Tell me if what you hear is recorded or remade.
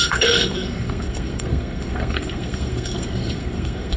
remade